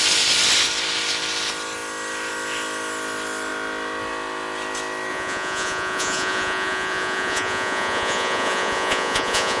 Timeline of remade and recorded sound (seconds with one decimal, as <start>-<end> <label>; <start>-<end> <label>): 0.0-5.1 recorded; 5.1-9.6 remade